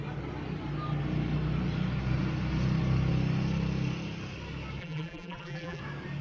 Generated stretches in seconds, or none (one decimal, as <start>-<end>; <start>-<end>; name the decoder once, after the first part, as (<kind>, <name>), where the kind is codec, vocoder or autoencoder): 4.8-5.8 (vocoder, BigVGAN v2)

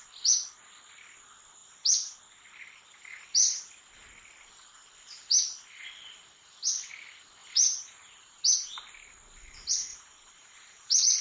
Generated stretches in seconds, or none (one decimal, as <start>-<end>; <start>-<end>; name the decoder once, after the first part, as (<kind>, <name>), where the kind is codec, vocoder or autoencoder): 7.4-8.4 (vocoder, BigVGAN v2); 9.9-11.2

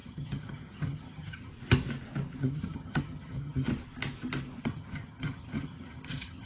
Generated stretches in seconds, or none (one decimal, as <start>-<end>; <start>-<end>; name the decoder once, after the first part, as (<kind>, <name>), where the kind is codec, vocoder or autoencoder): 0.0-1.5 (vocoder, HiFi-GAN); 2.4-3.7; 4.6-6.5